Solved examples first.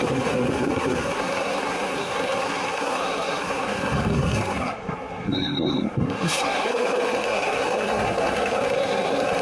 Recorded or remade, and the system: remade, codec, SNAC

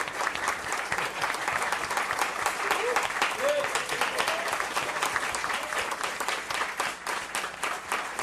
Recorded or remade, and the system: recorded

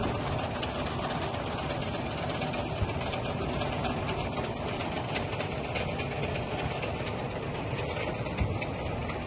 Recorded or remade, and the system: recorded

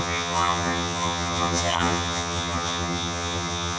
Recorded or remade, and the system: remade, vocoder, HiFi-GAN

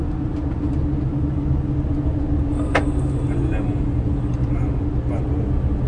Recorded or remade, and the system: recorded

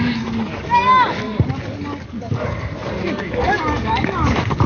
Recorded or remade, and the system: remade, codec, DAC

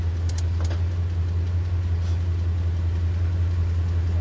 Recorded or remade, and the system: recorded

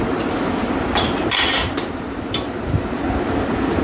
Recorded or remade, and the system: remade, vocoder, BigVGAN v2